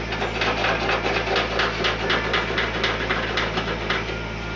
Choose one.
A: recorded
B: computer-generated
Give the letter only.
A